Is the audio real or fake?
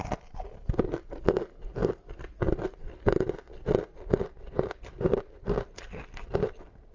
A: real